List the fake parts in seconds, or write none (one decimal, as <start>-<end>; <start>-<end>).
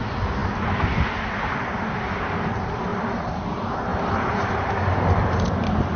2.9-3.4; 3.9-5.5